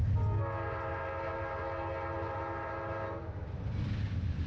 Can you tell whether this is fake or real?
real